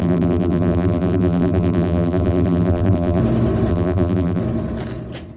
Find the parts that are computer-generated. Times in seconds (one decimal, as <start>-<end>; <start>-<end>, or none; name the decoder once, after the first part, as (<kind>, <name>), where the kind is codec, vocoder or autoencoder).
0.0-3.2 (vocoder, BigVGAN v2); 3.7-4.4